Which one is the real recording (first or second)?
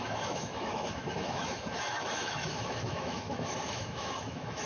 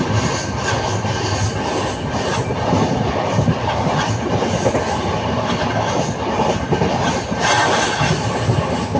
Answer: second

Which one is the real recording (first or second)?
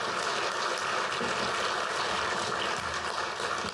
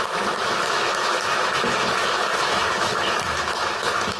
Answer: first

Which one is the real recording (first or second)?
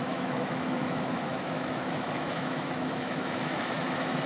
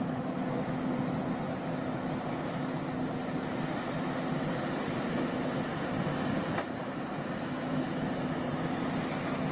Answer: second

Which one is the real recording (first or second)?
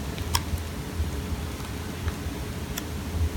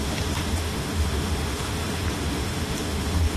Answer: first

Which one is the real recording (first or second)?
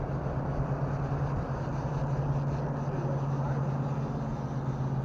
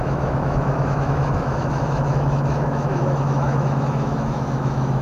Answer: first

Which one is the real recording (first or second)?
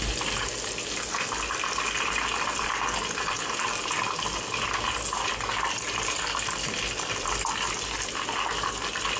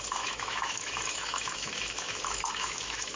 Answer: first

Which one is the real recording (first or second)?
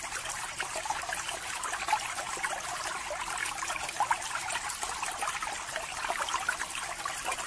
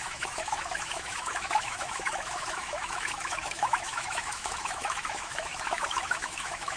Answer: first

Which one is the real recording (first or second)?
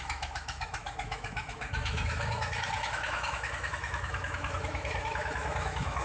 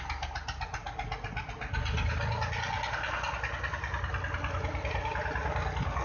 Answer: second